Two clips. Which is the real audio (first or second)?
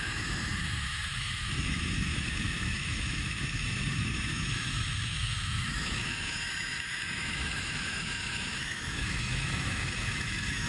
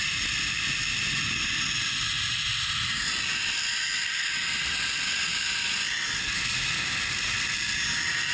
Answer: second